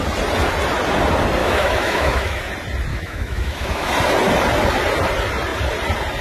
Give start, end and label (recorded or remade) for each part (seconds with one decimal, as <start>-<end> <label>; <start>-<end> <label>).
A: 0.0-1.4 recorded; 1.4-2.4 remade; 2.4-2.9 recorded; 2.9-3.9 remade; 3.9-6.2 recorded

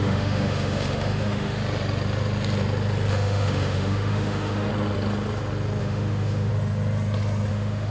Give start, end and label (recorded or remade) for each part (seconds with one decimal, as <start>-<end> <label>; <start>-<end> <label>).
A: 0.0-1.6 remade; 1.6-3.1 recorded; 3.1-4.7 remade; 4.7-5.8 recorded; 5.8-6.5 remade; 6.5-7.5 recorded; 7.5-7.9 remade

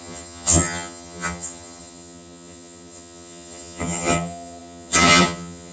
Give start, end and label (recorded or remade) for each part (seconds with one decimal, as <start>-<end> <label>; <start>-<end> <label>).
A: 0.0-5.7 remade

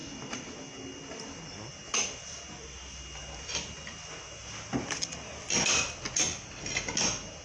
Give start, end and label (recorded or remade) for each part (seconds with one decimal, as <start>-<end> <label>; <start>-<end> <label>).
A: 0.0-7.4 recorded